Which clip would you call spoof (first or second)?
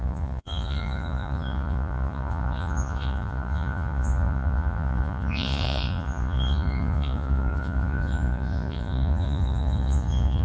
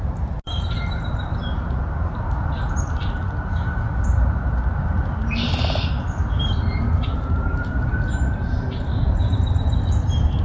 first